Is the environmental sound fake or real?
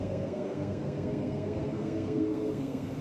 fake